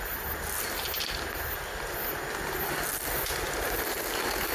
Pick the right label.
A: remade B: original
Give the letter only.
B